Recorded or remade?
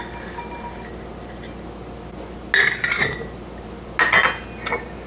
recorded